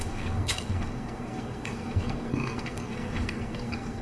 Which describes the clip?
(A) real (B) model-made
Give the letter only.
B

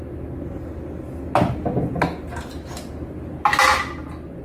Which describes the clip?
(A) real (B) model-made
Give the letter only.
A